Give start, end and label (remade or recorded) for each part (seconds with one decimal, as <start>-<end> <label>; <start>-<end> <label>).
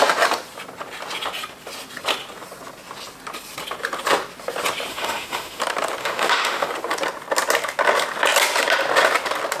0.0-4.9 recorded; 4.9-5.6 remade; 5.6-6.0 recorded; 6.0-6.7 remade; 6.7-9.6 recorded